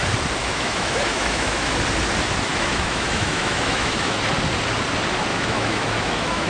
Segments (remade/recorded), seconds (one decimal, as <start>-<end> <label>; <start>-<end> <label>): 0.0-0.4 recorded; 0.4-1.7 remade; 1.7-2.5 recorded; 2.5-4.2 remade; 4.2-5.3 recorded; 5.3-6.5 remade